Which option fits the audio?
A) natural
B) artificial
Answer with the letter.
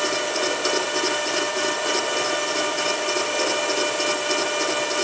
A